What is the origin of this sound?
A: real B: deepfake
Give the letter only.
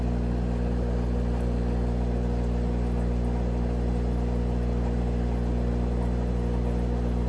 A